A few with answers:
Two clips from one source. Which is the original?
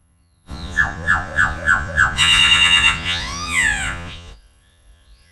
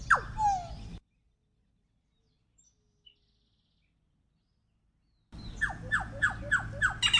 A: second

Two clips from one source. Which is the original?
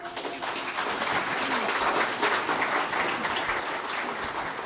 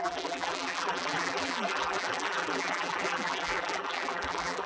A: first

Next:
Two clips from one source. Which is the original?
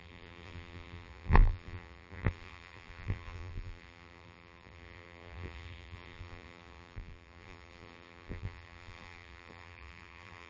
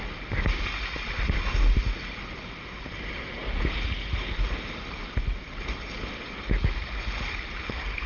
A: second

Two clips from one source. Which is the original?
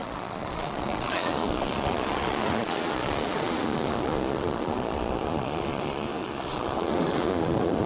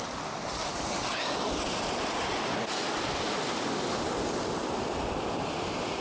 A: second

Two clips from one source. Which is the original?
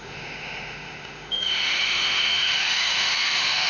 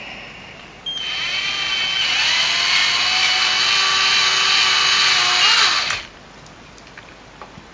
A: second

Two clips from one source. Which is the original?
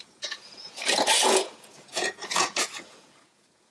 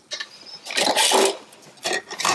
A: second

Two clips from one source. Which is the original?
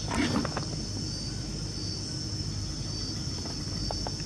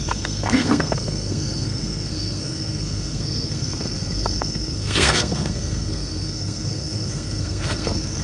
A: first